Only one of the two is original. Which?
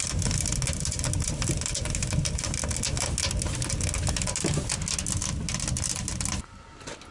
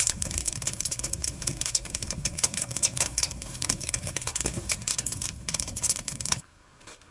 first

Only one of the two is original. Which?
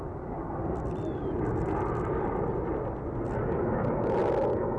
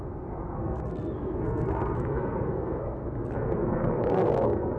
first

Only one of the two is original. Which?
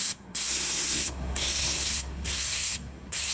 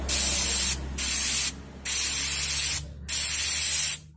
second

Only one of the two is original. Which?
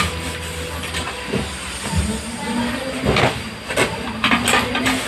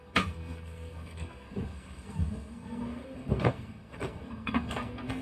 first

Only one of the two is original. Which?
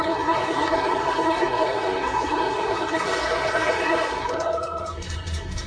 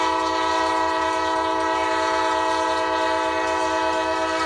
second